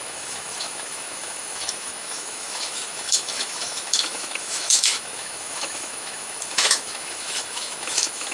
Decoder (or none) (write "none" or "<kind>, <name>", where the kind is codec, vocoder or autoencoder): autoencoder, DAC-VAE